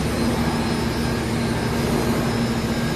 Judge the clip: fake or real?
real